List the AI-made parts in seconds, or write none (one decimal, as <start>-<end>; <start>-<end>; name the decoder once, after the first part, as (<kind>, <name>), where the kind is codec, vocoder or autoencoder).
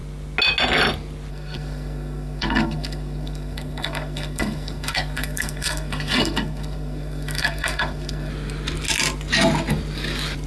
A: 1.3-8.3 (codec, SNAC)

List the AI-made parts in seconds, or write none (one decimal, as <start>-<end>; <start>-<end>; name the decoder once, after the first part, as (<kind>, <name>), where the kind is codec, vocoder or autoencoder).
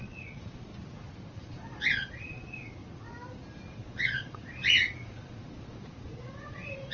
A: 0.0-0.7 (vocoder, Vocos); 1.3-2.8; 3.7-6.9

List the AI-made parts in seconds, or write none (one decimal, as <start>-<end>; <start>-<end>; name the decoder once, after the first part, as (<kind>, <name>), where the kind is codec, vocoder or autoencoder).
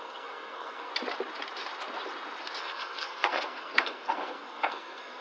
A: 0.0-0.9 (codec, SNAC); 2.6-5.2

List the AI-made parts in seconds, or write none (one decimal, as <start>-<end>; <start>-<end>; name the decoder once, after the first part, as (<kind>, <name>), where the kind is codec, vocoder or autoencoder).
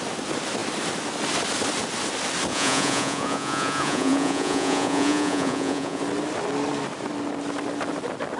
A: 2.5-6.0 (vocoder, Vocos)